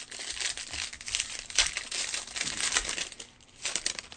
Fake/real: real